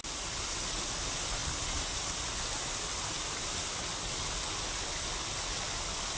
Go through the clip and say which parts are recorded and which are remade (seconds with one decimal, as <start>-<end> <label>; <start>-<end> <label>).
0.0-6.2 recorded